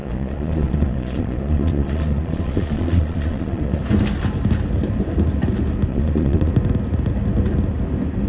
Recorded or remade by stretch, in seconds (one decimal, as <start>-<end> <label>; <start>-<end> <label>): 0.0-3.8 remade; 3.8-5.9 recorded; 5.9-6.5 remade; 6.5-8.3 recorded